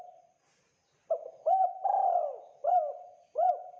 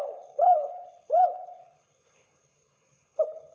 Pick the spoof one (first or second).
second